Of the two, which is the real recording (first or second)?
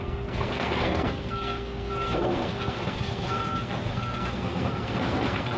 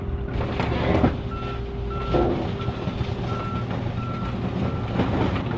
second